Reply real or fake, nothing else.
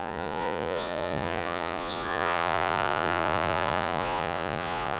fake